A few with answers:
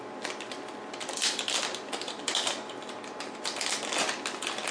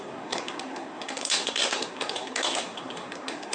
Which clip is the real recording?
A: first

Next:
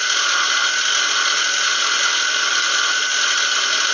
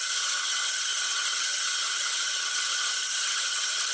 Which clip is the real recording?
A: first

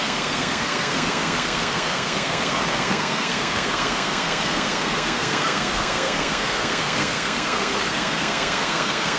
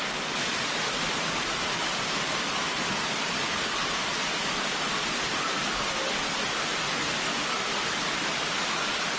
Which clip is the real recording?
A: second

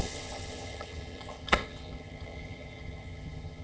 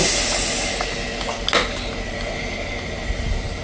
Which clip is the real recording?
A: second